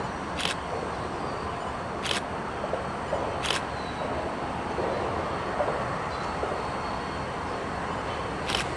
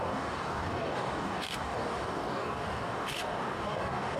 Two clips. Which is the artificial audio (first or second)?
second